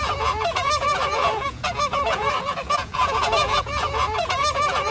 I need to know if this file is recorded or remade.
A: remade